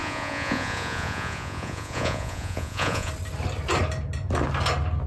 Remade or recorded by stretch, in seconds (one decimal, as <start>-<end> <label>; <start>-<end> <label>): 0.0-3.1 remade; 3.1-5.1 recorded